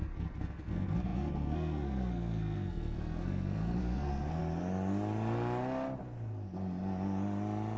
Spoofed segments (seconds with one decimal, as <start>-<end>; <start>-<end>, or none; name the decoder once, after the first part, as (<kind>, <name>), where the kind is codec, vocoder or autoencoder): 0.0-4.4 (codec, SNAC)